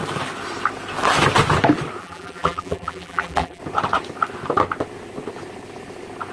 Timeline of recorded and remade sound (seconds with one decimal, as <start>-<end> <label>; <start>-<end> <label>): 0.0-2.0 recorded; 2.0-3.6 remade; 3.6-6.3 recorded